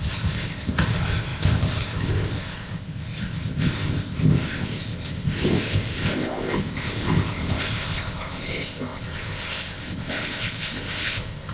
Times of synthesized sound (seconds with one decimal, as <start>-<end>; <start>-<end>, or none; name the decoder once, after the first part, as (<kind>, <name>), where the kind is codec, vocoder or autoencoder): 0.0-11.5 (codec, ZipCodec)

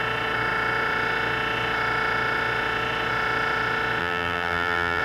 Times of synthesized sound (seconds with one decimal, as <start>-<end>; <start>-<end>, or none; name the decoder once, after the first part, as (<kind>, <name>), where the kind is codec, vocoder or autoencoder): 4.0-5.0 (vocoder, BigVGAN v2)